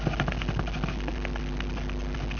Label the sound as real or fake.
real